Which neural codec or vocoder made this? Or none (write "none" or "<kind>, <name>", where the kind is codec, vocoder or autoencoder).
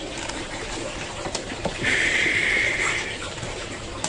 vocoder, BigVGAN v2